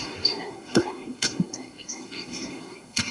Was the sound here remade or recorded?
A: remade